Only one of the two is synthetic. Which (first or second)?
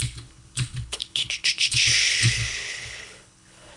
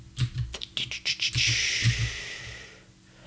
first